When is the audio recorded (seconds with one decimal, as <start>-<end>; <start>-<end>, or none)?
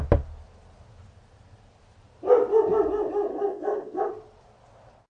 0.0-3.3; 4.1-5.1